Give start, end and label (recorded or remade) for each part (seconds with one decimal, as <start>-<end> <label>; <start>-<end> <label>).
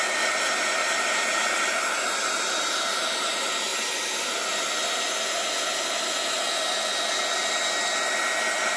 0.0-8.8 recorded